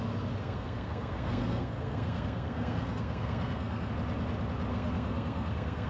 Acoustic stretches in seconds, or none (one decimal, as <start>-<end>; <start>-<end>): 0.0-0.4; 3.9-4.7